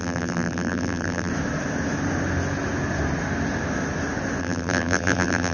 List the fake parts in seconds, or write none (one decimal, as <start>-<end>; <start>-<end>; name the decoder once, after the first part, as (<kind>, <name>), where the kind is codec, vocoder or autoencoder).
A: 0.0-1.3 (vocoder, BigVGAN v2); 4.4-5.5

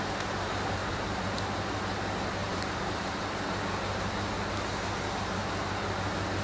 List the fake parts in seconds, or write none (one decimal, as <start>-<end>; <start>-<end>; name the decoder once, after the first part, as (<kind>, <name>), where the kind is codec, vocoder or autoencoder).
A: 0.8-1.3 (vocoder, BigVGAN v2); 2.4-3.2

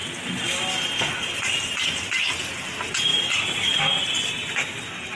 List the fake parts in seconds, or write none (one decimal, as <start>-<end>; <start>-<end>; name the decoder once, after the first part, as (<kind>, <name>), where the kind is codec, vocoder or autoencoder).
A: 3.1-3.8 (vocoder, BigVGAN v2)

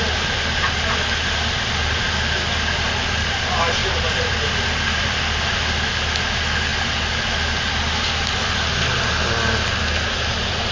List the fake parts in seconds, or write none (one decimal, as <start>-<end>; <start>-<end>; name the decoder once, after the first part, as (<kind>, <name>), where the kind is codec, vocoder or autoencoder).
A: 3.8-4.3 (vocoder, BigVGAN v2)

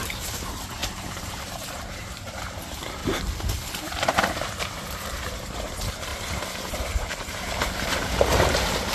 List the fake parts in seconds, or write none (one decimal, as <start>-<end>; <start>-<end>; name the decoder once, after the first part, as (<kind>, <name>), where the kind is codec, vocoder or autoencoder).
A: 0.0-3.0 (vocoder, BigVGAN v2); 3.7-6.1; 6.7-8.9